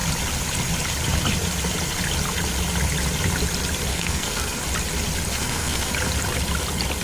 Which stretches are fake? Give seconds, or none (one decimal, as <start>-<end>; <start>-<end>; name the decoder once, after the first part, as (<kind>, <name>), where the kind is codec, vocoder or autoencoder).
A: 3.9-4.6 (codec, SNAC); 5.3-5.9